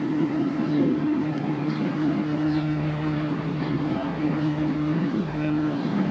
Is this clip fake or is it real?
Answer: fake